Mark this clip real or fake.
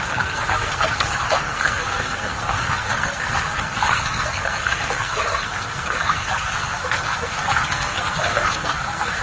fake